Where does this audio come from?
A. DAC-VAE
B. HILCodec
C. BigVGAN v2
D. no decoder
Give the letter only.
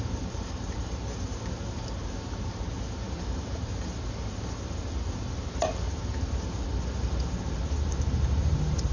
C